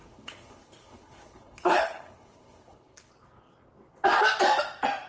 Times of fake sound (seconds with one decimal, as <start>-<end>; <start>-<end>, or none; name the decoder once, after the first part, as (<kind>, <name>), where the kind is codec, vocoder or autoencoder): 0.0-3.1 (codec, HILCodec)